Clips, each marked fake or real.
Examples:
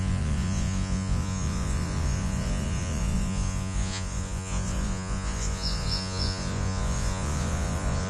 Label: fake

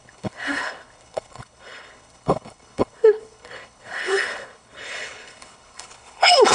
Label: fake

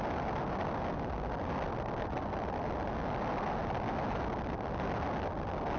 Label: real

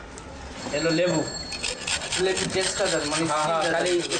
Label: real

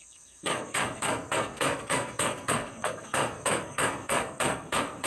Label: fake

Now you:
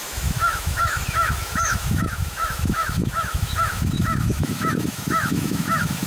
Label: fake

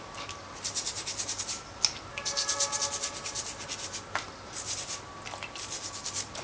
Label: real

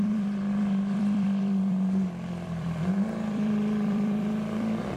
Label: fake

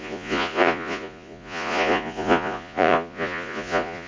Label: fake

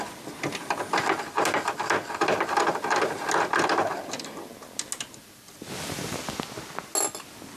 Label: real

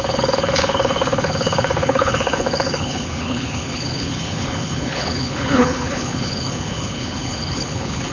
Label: fake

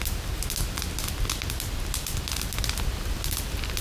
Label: real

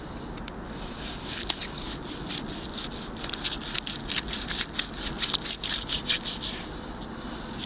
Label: real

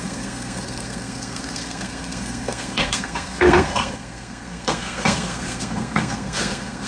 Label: fake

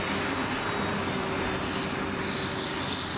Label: real